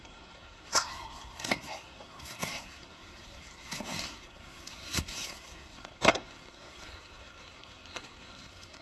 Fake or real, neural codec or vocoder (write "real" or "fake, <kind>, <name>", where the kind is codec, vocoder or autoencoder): fake, codec, SNAC